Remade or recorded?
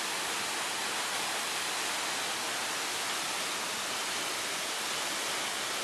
recorded